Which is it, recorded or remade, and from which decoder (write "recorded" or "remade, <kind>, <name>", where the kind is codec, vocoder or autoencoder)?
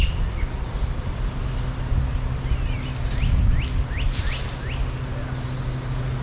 recorded